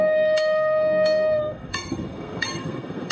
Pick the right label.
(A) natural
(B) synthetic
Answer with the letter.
B